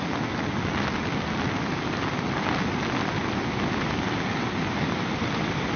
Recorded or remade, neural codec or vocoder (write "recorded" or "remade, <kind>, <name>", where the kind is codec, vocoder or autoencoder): recorded